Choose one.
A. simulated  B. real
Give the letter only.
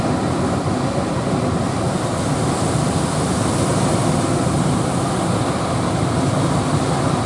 B